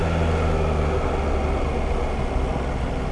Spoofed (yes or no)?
no